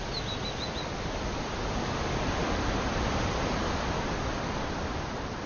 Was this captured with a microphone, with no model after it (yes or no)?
yes